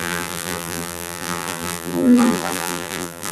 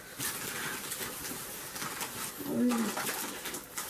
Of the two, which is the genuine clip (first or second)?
second